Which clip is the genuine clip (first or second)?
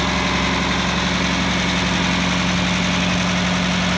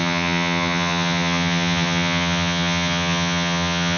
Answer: first